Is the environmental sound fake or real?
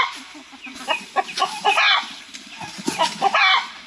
real